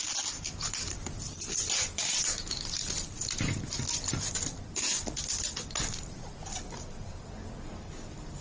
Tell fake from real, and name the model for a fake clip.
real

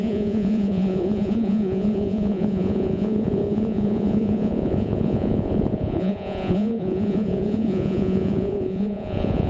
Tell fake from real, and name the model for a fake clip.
fake, vocoder, Vocos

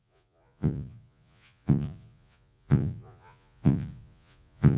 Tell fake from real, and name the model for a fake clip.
fake, vocoder, Vocos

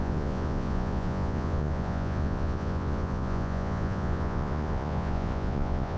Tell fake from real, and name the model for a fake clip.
fake, vocoder, Vocos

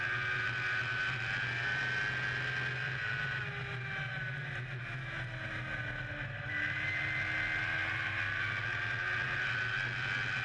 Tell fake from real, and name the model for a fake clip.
real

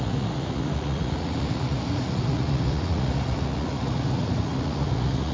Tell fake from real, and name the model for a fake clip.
fake, vocoder, Vocos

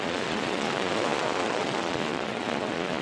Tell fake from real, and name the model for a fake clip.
fake, vocoder, Vocos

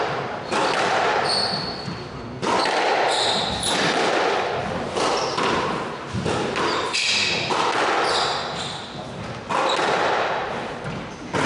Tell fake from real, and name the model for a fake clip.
real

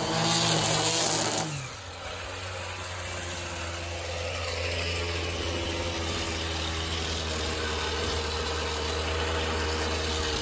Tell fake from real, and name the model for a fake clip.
real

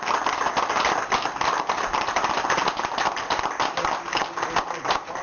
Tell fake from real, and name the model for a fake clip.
real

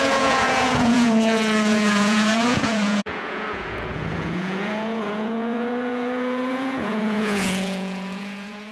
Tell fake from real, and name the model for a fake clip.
fake, vocoder, Vocos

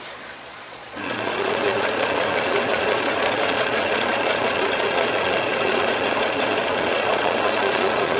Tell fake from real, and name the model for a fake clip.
fake, vocoder, Vocos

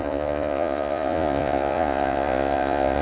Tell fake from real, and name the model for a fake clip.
fake, vocoder, Vocos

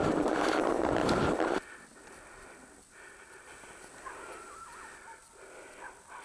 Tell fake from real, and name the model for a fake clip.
real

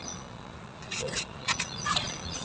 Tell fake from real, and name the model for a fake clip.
fake, vocoder, Vocos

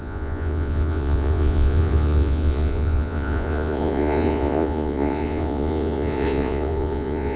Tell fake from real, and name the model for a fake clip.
fake, vocoder, Vocos